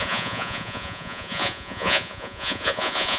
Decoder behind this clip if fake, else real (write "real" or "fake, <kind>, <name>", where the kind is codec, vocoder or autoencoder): fake, vocoder, Vocos